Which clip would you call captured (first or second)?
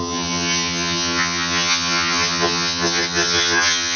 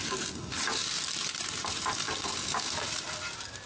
second